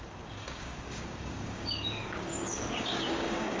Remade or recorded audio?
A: remade